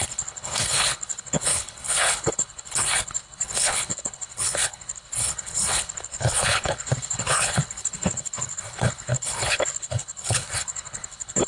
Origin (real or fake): fake